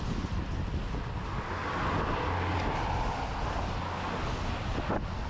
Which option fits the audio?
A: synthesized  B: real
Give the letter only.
B